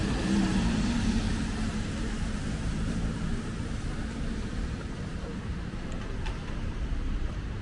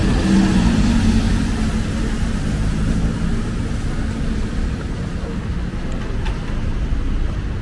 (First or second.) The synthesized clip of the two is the first